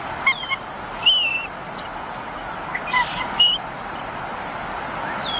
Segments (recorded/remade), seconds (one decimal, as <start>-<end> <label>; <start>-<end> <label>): 0.0-5.4 recorded